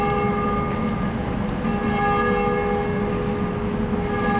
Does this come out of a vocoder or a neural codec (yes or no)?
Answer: no